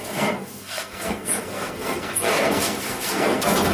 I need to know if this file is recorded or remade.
remade